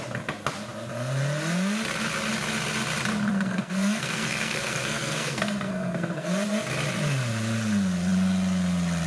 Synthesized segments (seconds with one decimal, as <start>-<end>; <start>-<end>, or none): 3.3-6.3